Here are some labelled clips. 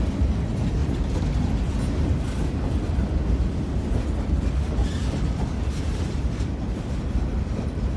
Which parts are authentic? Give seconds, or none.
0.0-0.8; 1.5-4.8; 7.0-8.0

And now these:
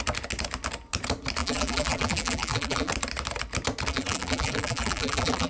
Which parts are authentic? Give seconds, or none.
0.0-1.4; 2.9-3.9

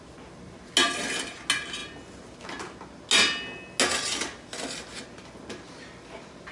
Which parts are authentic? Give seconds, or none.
0.0-6.5

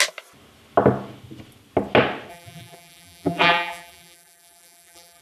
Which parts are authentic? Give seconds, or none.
0.0-2.3

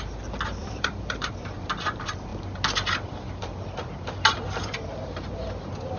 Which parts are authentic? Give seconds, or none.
0.0-0.6; 1.3-6.0

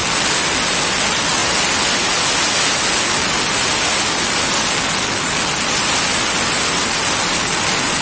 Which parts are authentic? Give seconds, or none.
0.0-8.0

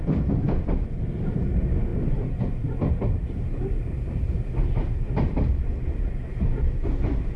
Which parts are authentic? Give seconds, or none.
none

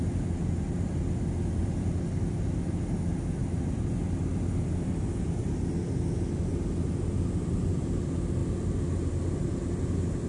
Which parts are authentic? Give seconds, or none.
0.0-1.6; 2.3-10.3